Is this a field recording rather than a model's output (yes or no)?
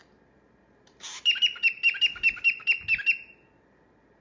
yes